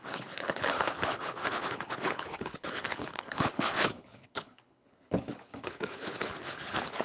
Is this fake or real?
fake